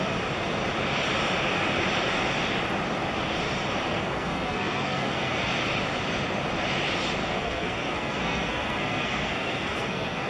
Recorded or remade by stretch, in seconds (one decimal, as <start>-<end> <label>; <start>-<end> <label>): 0.0-3.9 recorded; 3.9-5.5 remade; 5.5-7.2 recorded; 7.2-10.3 remade